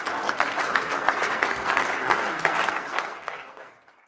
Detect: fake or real fake